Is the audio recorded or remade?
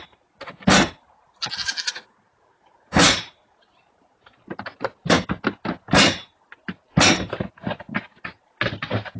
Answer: recorded